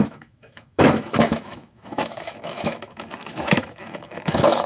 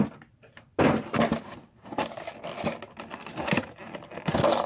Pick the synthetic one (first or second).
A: first